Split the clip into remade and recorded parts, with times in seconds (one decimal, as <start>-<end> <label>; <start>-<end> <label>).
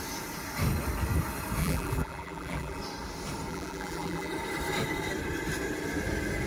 0.0-1.6 recorded; 1.6-2.8 remade; 2.8-3.5 recorded; 3.5-4.3 remade; 4.3-6.5 recorded